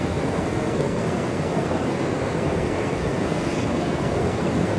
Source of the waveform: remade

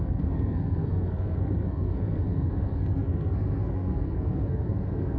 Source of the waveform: remade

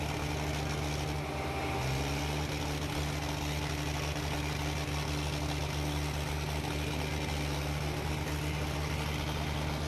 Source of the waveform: recorded